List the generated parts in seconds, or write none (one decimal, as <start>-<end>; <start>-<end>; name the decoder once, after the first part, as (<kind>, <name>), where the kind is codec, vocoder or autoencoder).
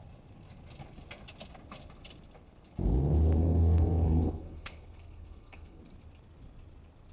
3.4-5.8 (codec, SNAC)